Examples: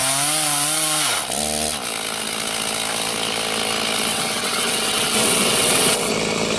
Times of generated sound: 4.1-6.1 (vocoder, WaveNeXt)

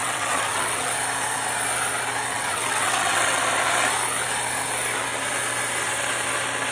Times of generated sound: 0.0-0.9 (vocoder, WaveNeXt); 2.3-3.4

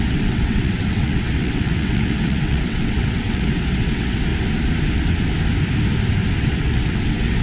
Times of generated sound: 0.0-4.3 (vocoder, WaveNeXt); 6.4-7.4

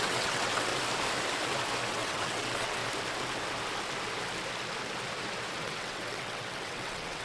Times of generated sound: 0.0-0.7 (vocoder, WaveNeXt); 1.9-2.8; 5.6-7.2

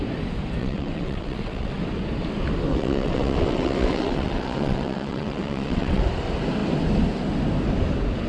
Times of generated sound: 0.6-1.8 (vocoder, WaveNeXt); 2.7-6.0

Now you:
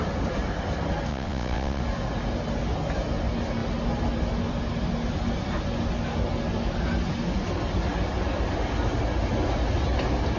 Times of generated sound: 1.1-1.8 (vocoder, WaveNeXt)